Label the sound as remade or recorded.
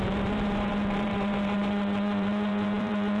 remade